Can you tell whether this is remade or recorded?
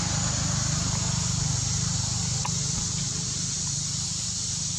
recorded